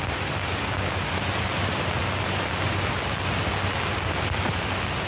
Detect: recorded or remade recorded